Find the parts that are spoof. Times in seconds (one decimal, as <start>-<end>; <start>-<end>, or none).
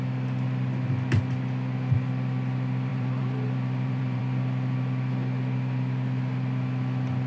2.9-4.2